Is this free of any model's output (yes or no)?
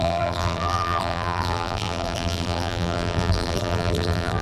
no